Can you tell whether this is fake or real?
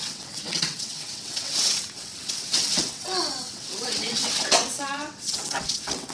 fake